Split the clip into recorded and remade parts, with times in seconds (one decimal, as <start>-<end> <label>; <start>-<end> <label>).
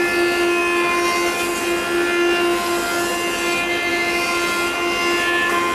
0.0-5.7 recorded